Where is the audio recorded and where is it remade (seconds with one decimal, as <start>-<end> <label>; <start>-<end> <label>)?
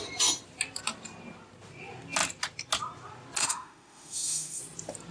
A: 0.0-3.4 recorded; 3.4-4.6 remade; 4.6-5.1 recorded